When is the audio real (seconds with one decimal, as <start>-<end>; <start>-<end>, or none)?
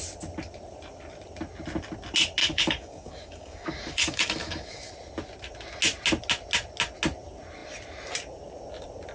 0.0-2.4; 4.9-9.1